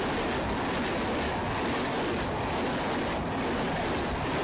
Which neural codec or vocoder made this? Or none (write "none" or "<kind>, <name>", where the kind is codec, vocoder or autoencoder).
none